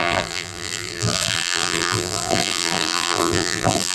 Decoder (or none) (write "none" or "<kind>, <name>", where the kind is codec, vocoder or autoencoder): vocoder, BigVGAN v2